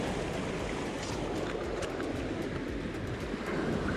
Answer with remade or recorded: recorded